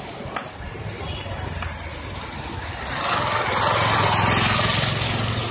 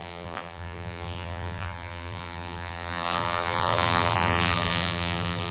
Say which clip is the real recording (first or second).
first